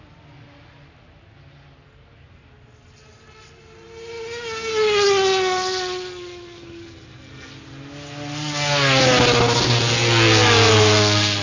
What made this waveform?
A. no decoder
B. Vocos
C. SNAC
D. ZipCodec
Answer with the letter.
A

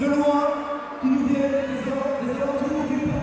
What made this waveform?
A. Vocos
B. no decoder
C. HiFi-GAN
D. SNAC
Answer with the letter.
B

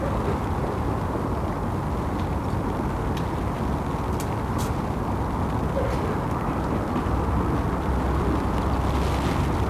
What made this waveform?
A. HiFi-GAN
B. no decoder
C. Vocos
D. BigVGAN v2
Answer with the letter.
B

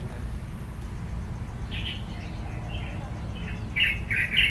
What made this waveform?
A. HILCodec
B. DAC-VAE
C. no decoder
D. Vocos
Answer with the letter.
C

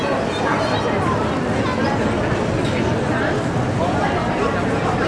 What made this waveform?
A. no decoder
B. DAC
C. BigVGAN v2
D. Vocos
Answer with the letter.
A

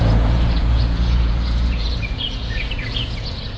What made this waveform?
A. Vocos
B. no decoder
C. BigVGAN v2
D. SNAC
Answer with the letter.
A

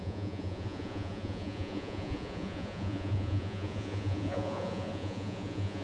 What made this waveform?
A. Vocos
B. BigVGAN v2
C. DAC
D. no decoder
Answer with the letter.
A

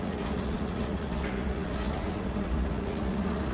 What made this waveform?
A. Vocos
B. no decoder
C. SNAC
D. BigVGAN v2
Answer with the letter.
A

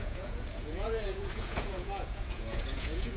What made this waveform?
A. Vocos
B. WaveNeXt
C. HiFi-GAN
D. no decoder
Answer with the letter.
A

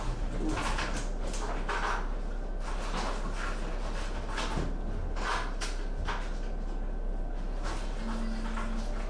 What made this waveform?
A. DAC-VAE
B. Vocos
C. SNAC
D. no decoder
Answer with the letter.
D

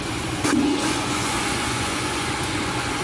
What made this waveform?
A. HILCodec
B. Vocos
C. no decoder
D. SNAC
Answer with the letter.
B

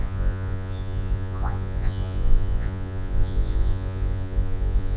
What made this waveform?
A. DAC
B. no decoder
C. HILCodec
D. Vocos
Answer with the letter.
D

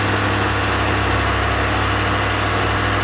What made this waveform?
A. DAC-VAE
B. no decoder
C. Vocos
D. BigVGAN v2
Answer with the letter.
B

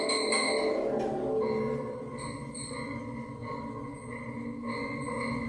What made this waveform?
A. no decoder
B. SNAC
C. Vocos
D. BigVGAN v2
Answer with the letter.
A